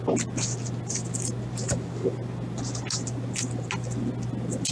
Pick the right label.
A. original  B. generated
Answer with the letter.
A